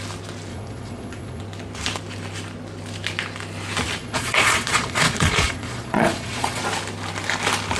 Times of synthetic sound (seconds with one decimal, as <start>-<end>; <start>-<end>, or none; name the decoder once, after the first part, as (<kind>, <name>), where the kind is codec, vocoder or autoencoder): 0.5-1.4 (vocoder, Vocos); 4.0-6.6